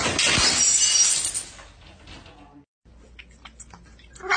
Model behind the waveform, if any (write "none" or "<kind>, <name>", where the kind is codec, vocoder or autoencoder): none